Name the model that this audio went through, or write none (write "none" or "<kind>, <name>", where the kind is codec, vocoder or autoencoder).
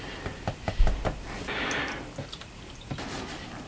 none